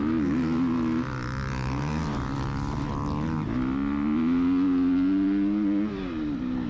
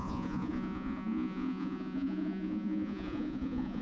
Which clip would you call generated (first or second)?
second